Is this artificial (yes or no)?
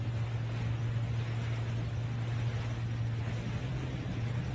no